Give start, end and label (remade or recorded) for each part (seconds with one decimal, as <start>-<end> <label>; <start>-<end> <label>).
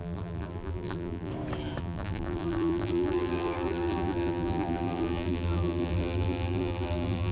0.0-1.3 remade; 1.3-1.8 recorded; 1.8-7.3 remade